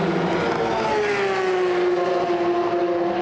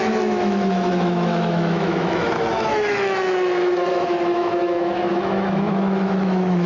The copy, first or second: second